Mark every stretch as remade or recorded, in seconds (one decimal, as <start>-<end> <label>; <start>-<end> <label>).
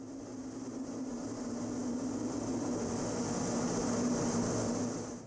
0.0-5.3 recorded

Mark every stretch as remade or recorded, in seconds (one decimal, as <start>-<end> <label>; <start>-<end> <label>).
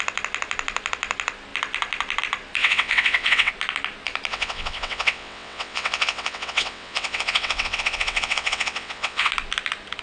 0.0-2.6 recorded; 2.6-3.5 remade; 3.5-4.3 recorded; 4.3-9.3 remade; 9.3-10.0 recorded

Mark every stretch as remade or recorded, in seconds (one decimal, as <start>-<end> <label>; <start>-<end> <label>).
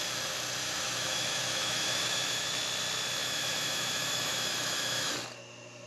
0.0-0.6 recorded; 0.6-2.5 remade; 2.5-3.2 recorded; 3.2-5.1 remade; 5.1-5.9 recorded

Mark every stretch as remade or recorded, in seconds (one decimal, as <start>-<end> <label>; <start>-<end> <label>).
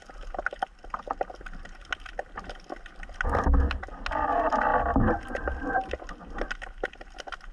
0.0-7.5 recorded